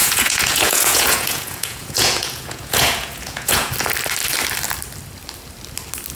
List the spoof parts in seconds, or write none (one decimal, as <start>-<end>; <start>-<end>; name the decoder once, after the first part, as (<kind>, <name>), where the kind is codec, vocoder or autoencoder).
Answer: 0.0-3.7 (vocoder, Vocos)